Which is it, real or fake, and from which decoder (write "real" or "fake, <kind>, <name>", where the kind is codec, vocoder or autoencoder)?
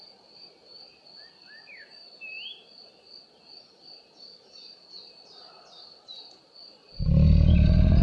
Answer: real